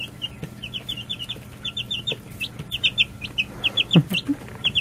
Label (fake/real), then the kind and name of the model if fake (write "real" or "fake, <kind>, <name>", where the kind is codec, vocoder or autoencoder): real